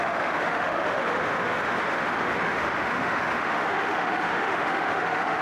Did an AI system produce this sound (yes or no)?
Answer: yes